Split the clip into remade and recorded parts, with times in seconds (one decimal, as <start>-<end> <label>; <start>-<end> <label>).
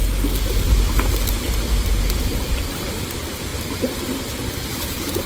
0.0-1.4 recorded; 1.4-3.5 remade; 3.5-4.5 recorded; 4.5-5.3 remade